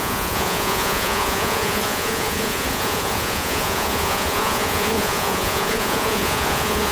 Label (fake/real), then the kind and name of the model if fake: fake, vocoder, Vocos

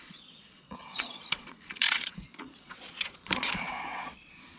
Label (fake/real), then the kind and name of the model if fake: fake, vocoder, Vocos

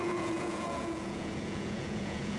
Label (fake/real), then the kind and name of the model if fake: fake, vocoder, Vocos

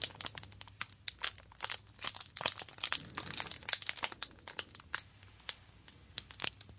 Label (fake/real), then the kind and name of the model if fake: real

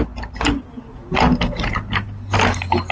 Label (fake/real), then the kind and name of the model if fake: real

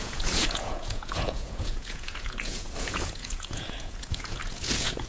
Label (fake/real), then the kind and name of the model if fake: fake, vocoder, Vocos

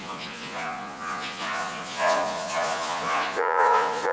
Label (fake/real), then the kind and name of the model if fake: fake, vocoder, Vocos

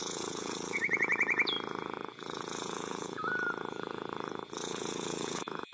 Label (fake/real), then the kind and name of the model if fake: fake, vocoder, Vocos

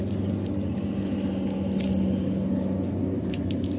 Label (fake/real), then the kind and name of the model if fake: real